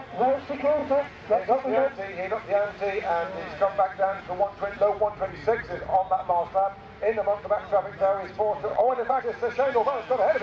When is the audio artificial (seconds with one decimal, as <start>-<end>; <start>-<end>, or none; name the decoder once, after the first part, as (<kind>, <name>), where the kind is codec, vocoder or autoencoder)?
8.7-9.2 (vocoder, WaveNeXt)